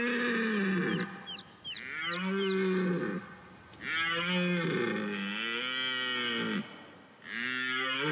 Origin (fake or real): real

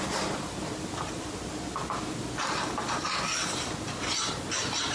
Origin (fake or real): real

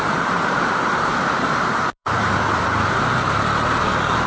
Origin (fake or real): fake